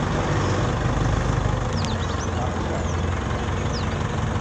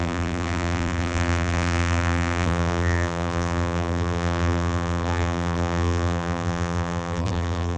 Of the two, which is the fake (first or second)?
second